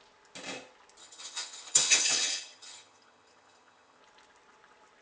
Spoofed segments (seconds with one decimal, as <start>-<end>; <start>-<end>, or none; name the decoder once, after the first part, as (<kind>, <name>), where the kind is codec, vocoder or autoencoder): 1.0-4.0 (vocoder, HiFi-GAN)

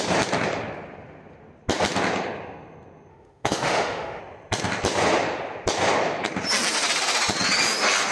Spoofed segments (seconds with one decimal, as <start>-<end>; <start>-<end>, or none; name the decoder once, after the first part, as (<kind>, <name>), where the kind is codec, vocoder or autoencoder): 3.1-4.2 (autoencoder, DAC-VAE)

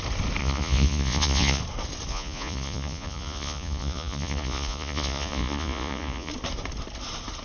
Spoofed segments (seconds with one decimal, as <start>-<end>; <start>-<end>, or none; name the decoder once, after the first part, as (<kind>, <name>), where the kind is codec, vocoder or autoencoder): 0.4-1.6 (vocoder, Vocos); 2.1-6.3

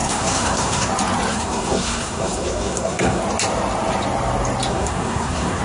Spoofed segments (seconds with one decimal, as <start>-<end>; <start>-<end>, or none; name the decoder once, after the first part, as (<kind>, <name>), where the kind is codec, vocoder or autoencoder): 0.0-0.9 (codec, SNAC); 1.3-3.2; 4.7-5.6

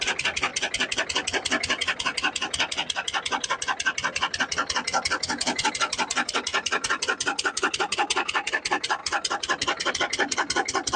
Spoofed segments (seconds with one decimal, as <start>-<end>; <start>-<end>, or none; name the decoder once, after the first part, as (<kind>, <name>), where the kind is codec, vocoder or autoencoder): none